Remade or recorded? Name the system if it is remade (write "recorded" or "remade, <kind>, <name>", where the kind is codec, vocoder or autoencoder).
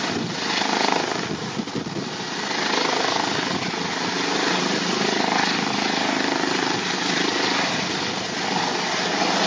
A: recorded